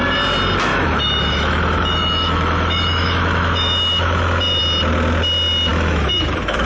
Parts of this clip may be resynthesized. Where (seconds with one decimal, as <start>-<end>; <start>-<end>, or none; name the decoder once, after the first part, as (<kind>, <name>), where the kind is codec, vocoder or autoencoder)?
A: 0.7-4.6 (autoencoder, DAC-VAE); 5.7-6.7